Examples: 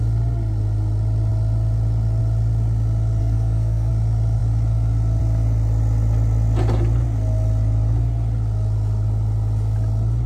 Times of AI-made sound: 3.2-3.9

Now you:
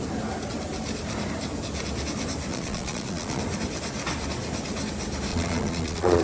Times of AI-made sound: 2.5-3.4; 5.3-6.2

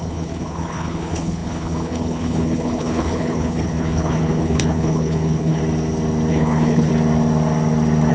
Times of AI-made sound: 0.0-5.6; 6.3-6.9

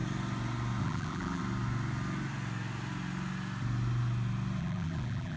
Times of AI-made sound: 0.8-1.4; 4.6-5.4

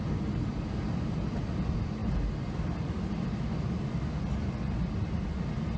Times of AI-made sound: none